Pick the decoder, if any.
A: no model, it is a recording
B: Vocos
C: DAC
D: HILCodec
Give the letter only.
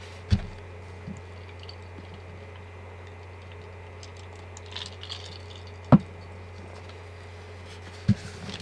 A